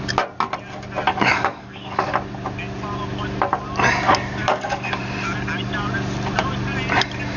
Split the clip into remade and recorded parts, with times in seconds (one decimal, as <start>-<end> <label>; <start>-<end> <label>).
0.0-1.1 recorded; 1.1-2.1 remade; 2.1-4.4 recorded; 4.4-5.0 remade; 5.0-7.4 recorded